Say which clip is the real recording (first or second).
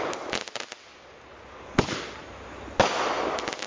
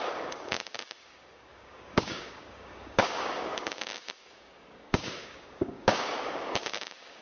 first